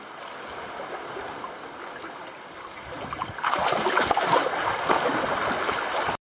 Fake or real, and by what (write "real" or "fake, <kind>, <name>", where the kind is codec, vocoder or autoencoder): real